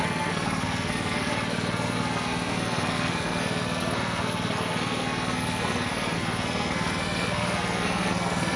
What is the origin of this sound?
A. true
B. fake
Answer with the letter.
B